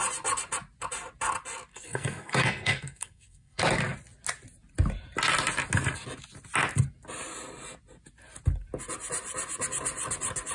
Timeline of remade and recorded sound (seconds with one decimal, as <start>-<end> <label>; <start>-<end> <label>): 0.0-1.7 recorded; 1.7-3.6 remade; 3.6-10.5 recorded